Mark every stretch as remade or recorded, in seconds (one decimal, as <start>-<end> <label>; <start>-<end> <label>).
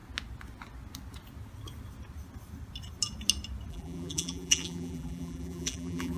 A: 0.0-3.7 recorded; 3.7-6.2 remade